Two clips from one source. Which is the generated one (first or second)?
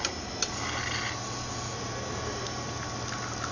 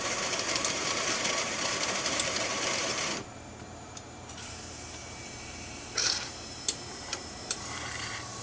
second